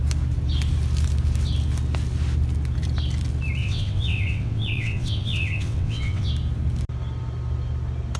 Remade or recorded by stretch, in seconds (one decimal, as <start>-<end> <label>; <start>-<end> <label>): 0.0-3.6 recorded; 3.6-6.3 remade; 6.3-8.2 recorded